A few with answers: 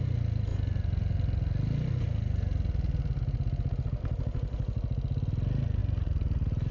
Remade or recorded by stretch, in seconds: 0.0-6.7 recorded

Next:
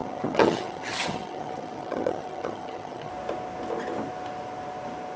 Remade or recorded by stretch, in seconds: 0.0-3.1 remade; 3.1-5.2 recorded

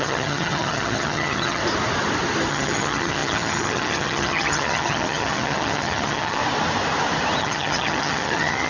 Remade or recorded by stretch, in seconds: 0.0-1.6 remade; 1.6-2.5 recorded; 2.5-6.4 remade; 6.4-7.4 recorded; 7.4-8.7 remade

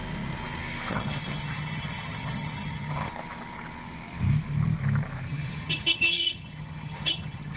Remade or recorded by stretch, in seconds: 0.0-0.9 recorded; 0.9-3.1 remade; 3.1-5.3 recorded; 5.3-7.6 remade

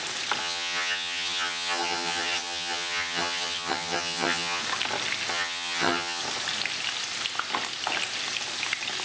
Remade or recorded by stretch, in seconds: 0.0-0.4 recorded; 0.4-4.6 remade; 4.6-5.3 recorded; 5.3-6.2 remade; 6.2-9.0 recorded